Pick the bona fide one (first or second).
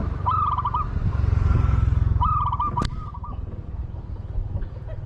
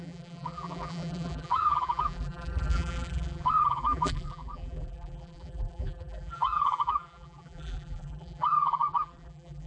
first